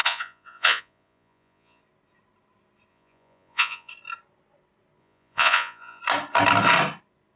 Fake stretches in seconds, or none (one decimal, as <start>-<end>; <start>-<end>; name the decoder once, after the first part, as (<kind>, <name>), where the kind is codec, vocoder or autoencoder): 0.0-1.8 (vocoder, Vocos); 2.9-3.9; 5.0-6.0